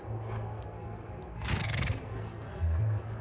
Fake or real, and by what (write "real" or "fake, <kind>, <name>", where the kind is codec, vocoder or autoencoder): fake, codec, SNAC